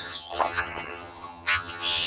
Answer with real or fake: fake